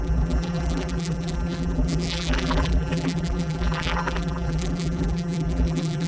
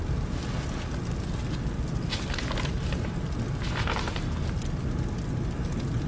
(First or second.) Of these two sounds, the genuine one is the second